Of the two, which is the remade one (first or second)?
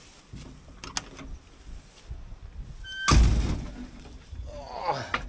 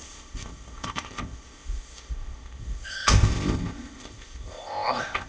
second